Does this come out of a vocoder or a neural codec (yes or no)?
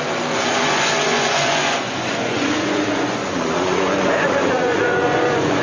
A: yes